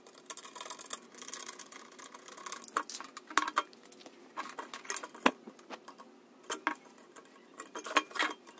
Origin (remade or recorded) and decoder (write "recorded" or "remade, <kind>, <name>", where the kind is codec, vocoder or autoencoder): recorded